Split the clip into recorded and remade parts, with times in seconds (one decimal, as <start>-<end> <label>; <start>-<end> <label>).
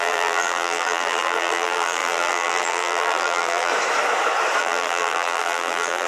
0.0-3.7 remade; 3.7-4.6 recorded; 4.6-6.1 remade